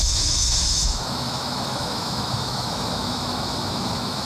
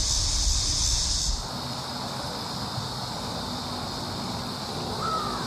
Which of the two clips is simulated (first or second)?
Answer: first